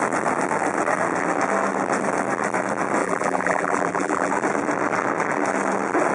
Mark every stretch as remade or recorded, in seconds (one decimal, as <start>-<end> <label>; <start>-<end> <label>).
0.0-3.0 recorded; 3.0-4.3 remade; 4.3-6.1 recorded